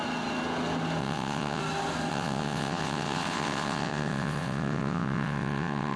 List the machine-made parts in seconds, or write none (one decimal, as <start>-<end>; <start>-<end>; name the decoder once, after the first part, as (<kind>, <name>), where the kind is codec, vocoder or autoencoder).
1.0-1.6 (vocoder, WaveNeXt); 2.1-6.0